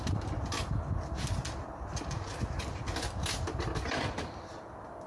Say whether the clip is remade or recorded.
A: recorded